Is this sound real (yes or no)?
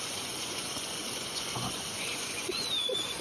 no